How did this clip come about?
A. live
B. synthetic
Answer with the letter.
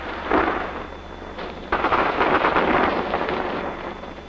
B